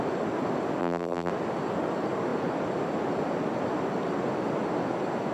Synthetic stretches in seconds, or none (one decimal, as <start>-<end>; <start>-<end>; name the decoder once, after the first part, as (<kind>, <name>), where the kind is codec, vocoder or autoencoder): 0.8-1.3 (vocoder, BigVGAN v2)